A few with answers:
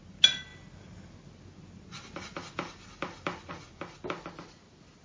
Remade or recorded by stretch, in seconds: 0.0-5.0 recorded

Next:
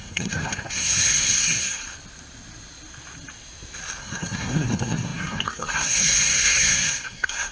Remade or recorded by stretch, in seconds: 0.0-1.8 remade; 1.8-4.0 recorded; 4.0-7.5 remade

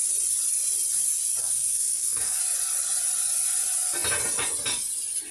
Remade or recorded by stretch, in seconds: 0.0-1.4 recorded; 1.4-2.4 remade; 2.4-5.3 recorded

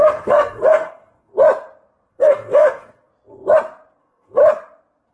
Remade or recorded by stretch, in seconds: 0.0-1.3 remade; 1.3-2.1 recorded; 2.1-3.1 remade; 3.1-4.0 recorded; 4.0-4.4 remade; 4.4-5.1 recorded